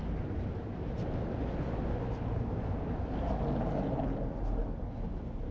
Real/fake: real